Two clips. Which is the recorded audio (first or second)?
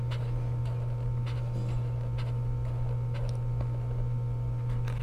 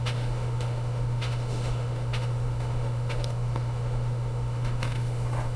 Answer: first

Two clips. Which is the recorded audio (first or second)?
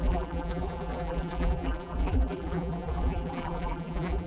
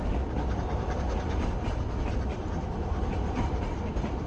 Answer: second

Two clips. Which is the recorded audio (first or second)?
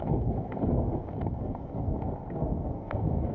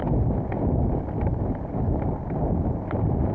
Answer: second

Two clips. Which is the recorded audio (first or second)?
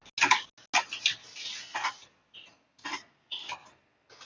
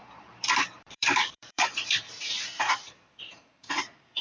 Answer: first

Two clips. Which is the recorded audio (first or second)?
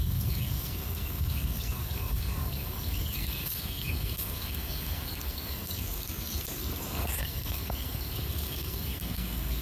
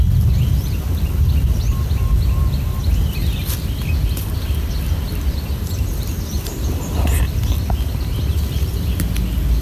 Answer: second